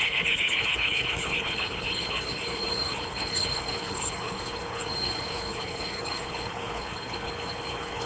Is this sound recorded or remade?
remade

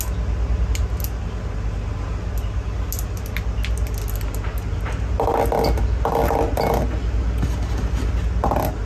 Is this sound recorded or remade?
recorded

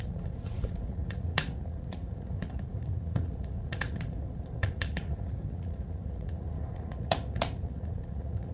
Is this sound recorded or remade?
remade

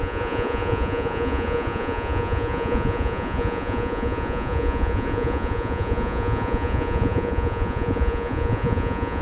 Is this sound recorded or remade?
remade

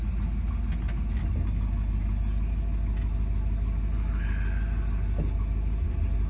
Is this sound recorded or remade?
recorded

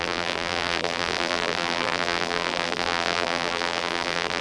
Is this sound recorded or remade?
remade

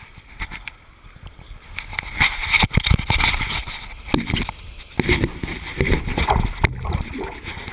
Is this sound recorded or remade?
recorded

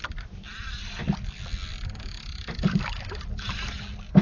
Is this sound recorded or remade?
recorded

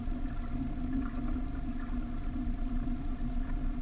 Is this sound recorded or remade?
recorded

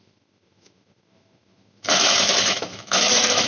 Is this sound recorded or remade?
remade